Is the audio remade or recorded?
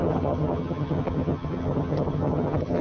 remade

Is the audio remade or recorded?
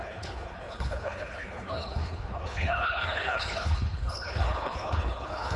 remade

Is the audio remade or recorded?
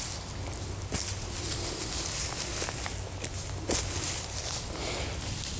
recorded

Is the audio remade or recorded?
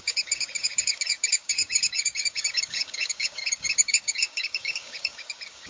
remade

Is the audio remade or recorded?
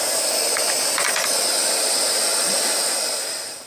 recorded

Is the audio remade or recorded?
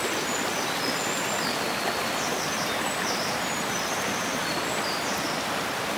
recorded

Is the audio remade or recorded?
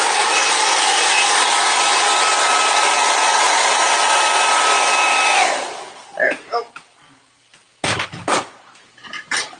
recorded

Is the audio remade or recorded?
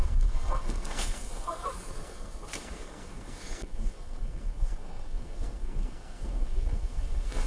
remade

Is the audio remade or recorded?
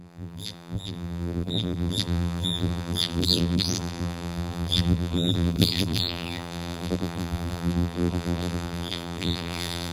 remade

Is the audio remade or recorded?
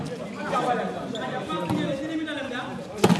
recorded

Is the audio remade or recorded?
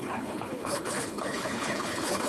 remade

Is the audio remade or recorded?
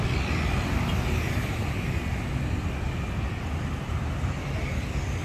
recorded